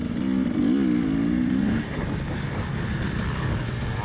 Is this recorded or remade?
recorded